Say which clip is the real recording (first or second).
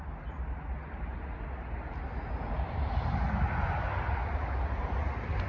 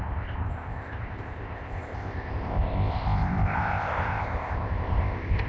first